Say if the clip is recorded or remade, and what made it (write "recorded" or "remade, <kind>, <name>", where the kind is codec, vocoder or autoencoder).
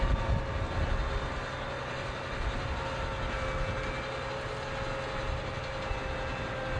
recorded